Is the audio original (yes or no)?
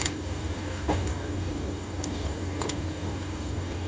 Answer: no